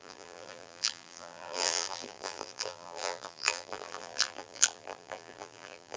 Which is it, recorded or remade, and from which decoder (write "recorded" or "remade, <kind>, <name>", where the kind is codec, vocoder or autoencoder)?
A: remade, vocoder, BigVGAN v2